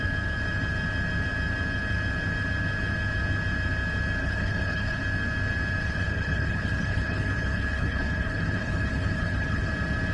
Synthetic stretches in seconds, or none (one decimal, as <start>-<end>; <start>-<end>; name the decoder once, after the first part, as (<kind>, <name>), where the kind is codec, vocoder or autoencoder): 4.2-5.0 (codec, HILCodec); 5.8-9.7